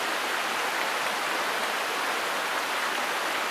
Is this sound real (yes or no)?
yes